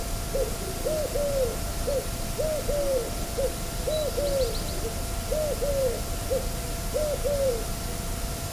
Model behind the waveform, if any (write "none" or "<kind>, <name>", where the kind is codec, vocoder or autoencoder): none